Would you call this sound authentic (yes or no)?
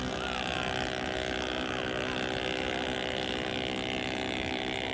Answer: yes